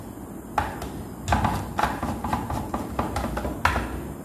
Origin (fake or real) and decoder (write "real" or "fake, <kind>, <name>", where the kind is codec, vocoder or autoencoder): real